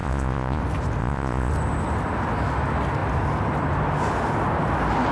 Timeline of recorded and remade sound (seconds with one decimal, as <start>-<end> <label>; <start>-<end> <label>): 0.0-0.6 remade; 0.6-1.0 recorded; 1.0-1.5 remade; 1.5-5.1 recorded